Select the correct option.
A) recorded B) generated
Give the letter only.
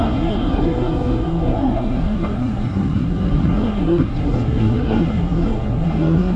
B